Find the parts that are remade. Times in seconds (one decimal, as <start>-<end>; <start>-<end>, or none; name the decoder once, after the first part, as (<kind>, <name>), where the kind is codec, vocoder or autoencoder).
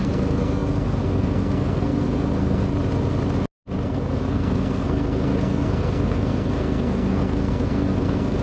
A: 0.0-2.7 (codec, SNAC); 3.8-8.4